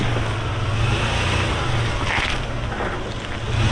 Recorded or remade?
recorded